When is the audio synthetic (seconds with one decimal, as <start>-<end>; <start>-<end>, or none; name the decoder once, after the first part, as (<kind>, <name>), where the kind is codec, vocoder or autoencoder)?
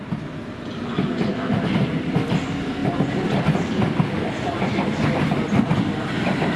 none